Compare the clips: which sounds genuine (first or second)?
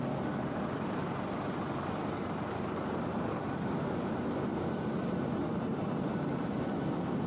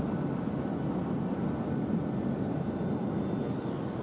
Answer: second